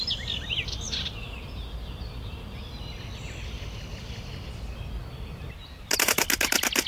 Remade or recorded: recorded